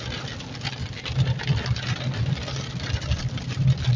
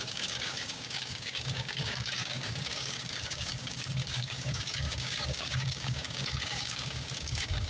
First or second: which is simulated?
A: second